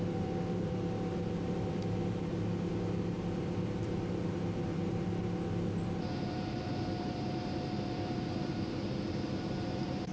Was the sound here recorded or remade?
remade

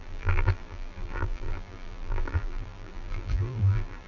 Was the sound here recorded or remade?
remade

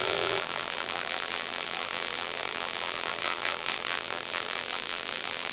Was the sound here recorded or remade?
remade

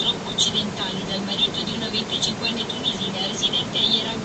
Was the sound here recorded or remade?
remade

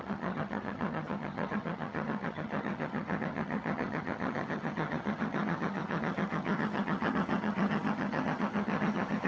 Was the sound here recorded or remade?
remade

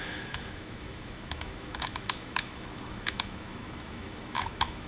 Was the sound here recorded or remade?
remade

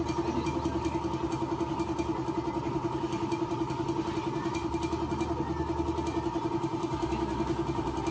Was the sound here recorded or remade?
recorded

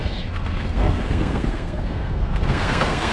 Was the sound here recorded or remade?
remade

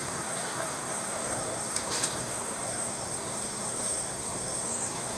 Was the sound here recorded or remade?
remade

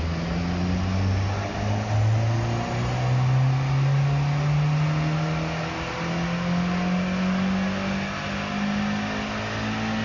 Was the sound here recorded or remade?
recorded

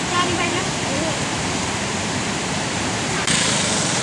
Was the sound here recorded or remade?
remade